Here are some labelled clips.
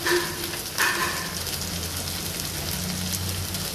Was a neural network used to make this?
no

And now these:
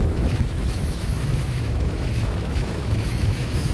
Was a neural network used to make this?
yes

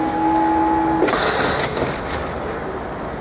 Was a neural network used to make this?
no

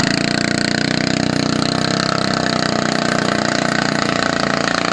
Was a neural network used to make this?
no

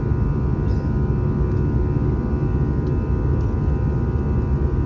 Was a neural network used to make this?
no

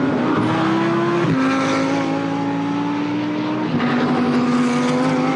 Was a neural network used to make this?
no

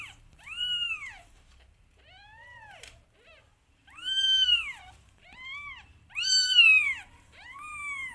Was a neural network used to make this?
yes